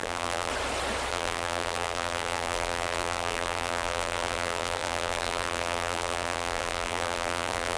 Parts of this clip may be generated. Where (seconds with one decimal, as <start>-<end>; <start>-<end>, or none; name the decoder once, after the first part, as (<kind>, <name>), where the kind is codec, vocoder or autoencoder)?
0.0-0.5 (vocoder, BigVGAN v2); 1.1-7.8